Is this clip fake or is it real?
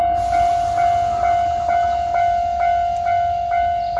real